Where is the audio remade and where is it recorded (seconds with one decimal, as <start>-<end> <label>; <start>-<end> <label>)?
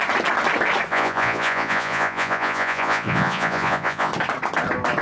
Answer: 0.0-0.9 recorded; 0.9-4.1 remade; 4.1-5.0 recorded